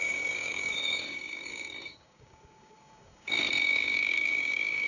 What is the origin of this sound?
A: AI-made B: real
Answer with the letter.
A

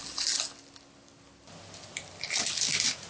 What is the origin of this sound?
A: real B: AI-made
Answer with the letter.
A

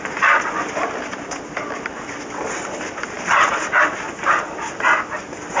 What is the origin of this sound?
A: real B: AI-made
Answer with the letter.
A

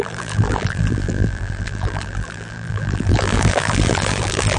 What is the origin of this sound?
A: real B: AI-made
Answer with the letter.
B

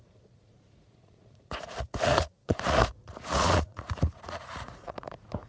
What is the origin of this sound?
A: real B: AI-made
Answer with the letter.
B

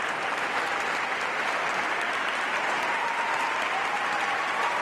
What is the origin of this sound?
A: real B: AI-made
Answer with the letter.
A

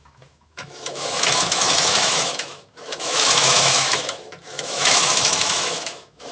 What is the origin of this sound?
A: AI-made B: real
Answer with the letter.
A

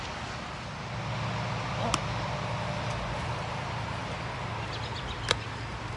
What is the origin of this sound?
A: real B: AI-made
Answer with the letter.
A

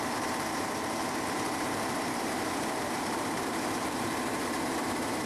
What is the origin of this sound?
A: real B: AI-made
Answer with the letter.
B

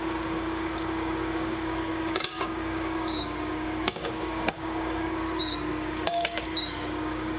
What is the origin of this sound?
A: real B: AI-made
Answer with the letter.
B